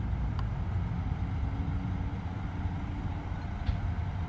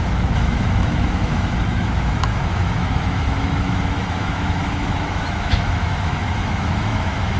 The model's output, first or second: second